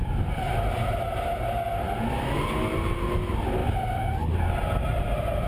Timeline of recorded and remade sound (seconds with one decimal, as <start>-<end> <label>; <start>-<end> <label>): 0.0-5.5 recorded